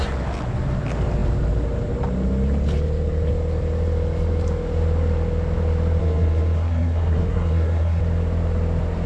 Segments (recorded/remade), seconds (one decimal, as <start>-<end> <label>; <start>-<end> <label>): 0.0-6.0 recorded; 6.0-8.0 remade; 8.0-9.1 recorded